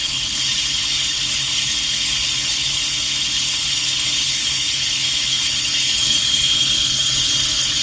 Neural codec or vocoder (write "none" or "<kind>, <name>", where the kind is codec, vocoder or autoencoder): codec, HILCodec